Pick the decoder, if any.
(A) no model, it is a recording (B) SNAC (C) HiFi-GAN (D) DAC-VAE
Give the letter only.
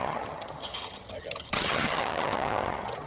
C